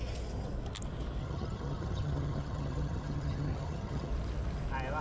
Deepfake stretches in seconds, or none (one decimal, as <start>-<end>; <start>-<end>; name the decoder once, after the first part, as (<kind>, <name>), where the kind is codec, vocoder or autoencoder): 1.2-4.1 (vocoder, HiFi-GAN)